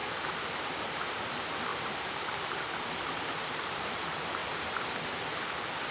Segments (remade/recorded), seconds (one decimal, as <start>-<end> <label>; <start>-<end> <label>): 0.0-1.7 recorded; 1.7-3.0 remade; 3.0-3.4 recorded; 3.4-4.0 remade; 4.0-5.9 recorded